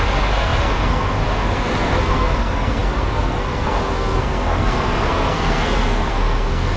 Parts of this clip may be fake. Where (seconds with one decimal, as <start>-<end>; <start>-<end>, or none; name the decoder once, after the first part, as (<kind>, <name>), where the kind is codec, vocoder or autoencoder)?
0.0-6.8 (codec, SNAC)